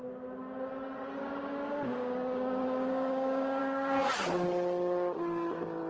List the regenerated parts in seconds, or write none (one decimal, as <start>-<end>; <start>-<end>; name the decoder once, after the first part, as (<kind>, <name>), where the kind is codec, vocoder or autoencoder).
1.2-3.6 (codec, DAC)